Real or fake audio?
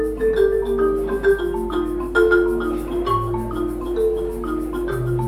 real